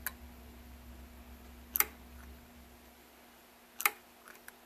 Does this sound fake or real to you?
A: real